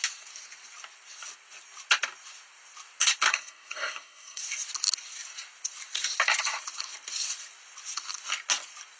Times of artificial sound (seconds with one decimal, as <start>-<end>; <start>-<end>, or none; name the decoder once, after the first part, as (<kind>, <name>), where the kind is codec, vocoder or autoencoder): 3.3-4.4 (codec, SNAC)